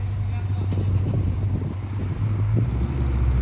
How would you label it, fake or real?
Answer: real